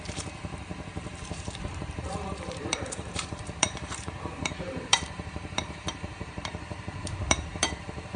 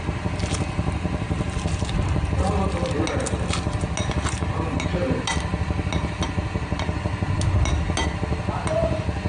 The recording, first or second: second